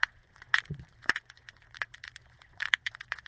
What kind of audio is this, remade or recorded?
remade